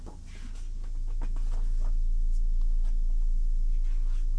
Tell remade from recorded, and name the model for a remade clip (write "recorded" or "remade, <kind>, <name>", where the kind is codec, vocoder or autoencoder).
recorded